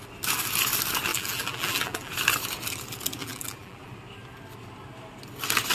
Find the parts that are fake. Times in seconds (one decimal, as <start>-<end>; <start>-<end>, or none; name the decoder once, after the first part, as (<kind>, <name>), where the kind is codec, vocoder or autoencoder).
1.1-2.1 (vocoder, BigVGAN v2); 3.2-3.9